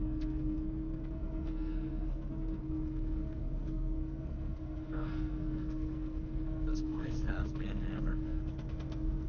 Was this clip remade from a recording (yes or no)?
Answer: yes